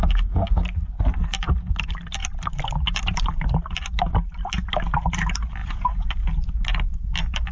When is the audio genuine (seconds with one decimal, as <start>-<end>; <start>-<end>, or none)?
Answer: 0.0-5.6; 6.1-7.5